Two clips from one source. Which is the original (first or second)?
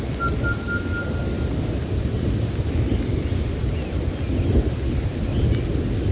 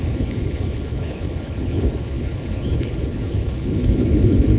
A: first